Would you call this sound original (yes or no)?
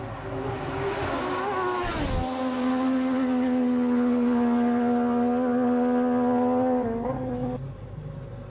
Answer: yes